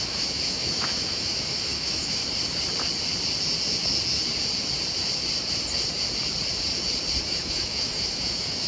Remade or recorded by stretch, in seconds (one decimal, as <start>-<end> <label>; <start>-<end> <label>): 0.0-2.2 remade; 2.2-7.2 recorded; 7.2-8.7 remade